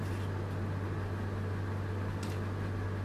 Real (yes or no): yes